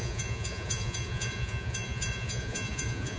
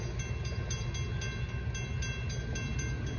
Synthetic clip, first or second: first